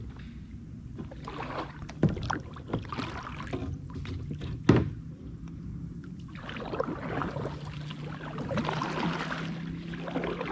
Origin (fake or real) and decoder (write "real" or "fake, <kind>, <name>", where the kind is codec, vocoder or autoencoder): real